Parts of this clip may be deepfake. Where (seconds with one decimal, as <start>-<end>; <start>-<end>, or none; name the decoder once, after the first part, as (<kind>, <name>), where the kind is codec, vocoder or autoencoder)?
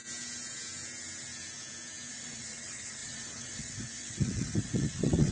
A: 2.1-5.3 (vocoder, WaveNeXt)